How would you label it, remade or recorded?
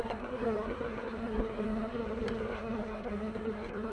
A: remade